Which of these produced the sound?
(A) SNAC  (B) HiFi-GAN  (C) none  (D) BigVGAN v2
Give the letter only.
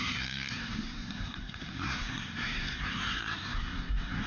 A